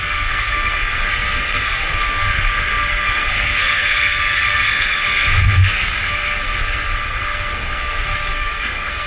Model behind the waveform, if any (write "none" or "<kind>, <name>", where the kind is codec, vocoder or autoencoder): codec, SNAC